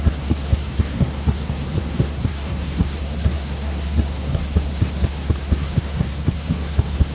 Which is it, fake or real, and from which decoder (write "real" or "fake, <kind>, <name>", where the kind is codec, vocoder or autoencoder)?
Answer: fake, codec, SNAC